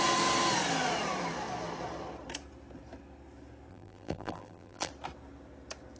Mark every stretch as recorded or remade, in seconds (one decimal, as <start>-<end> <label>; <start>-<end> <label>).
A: 0.0-3.7 recorded; 3.7-4.9 remade; 4.9-6.0 recorded